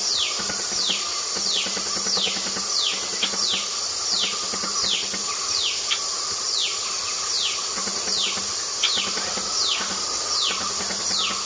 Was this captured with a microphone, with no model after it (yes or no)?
yes